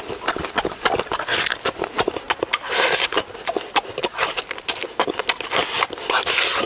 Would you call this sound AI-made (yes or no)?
no